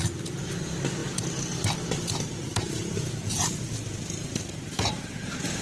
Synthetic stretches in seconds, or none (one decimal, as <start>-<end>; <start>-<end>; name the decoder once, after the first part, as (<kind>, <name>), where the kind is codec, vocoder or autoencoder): none